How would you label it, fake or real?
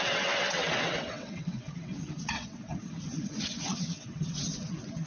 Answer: fake